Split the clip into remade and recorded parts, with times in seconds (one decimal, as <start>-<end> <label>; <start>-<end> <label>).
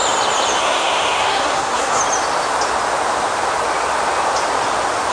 0.0-0.6 recorded; 0.6-2.0 remade; 2.0-5.1 recorded